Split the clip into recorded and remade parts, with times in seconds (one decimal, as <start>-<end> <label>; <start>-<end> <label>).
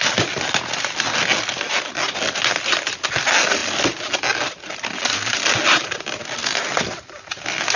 0.0-7.8 recorded